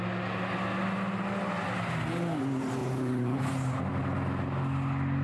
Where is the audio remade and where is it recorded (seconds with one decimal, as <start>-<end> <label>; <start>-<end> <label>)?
0.0-2.8 recorded; 2.8-4.0 remade; 4.0-5.2 recorded